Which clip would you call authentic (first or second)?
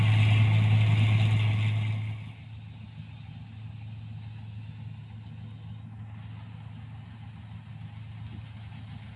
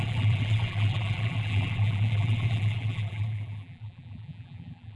first